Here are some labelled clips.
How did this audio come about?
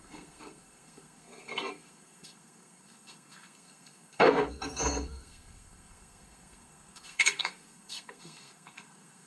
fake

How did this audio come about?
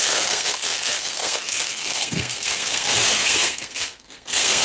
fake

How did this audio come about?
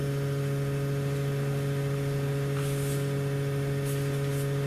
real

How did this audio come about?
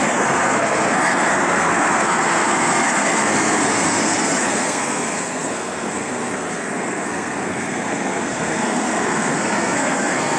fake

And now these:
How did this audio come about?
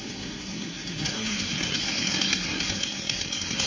fake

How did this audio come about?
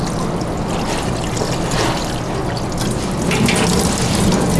real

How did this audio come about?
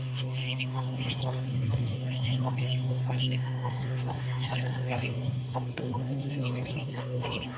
fake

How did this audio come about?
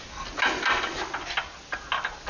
real